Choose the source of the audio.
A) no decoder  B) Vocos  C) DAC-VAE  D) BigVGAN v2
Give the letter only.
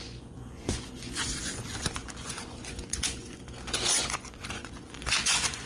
B